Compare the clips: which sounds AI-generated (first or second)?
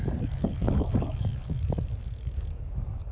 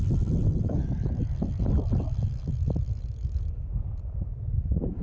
first